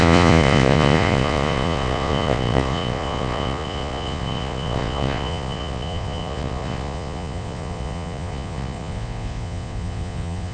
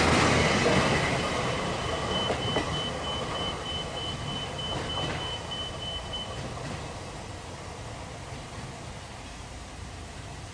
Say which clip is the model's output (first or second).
first